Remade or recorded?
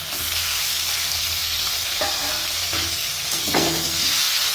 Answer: remade